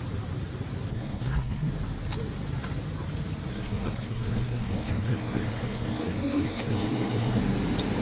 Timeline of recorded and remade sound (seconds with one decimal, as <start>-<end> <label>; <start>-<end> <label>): 0.0-0.9 recorded; 0.9-1.7 remade; 1.7-3.5 recorded; 3.5-7.4 remade; 7.4-8.0 recorded